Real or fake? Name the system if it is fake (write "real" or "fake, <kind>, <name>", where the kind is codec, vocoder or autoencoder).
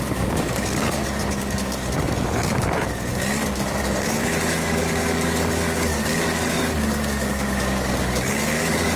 fake, codec, DAC